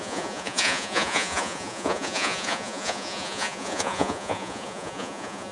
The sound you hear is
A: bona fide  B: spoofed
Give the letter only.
B